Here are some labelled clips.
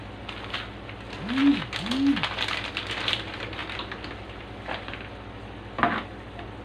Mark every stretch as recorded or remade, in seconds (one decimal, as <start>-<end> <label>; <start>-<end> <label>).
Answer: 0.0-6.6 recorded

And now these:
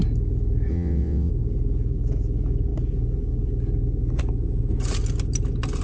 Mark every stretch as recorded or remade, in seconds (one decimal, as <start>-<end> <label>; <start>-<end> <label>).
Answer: 0.0-0.7 recorded; 0.7-1.3 remade; 1.3-5.8 recorded

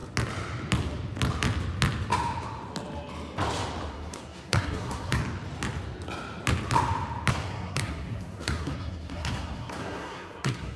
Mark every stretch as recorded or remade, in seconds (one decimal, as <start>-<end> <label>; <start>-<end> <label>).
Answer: 0.0-3.9 recorded; 3.9-5.2 remade; 5.2-7.3 recorded; 7.3-10.8 remade

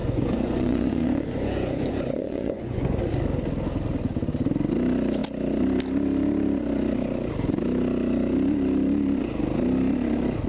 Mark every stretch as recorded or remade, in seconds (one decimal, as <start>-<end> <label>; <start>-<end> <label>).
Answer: 0.0-3.0 remade; 3.0-10.5 recorded

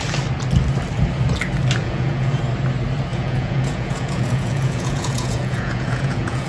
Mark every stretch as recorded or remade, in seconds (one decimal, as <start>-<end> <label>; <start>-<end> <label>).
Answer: 0.0-1.8 recorded; 1.8-2.4 remade; 2.4-3.1 recorded; 3.1-6.5 remade